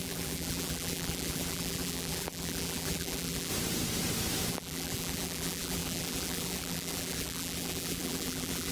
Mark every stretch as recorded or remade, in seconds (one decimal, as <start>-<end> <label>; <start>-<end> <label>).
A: 0.0-3.5 remade; 3.5-4.5 recorded; 4.5-8.7 remade